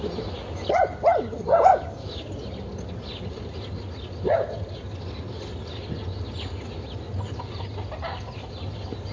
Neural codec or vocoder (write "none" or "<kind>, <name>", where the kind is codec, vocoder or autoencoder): none